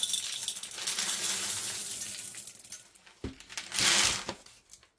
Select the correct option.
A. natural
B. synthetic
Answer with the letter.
A